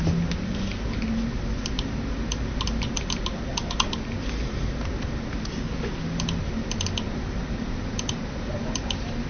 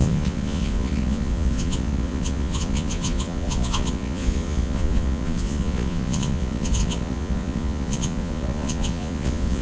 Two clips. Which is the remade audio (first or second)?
second